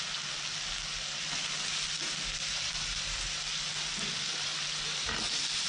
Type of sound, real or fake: real